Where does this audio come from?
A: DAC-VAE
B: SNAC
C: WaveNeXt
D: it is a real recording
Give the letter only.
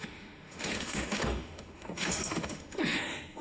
A